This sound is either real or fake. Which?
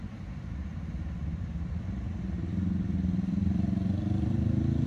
real